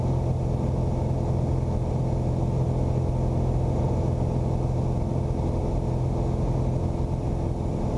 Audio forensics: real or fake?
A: real